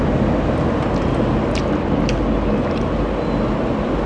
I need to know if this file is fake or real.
real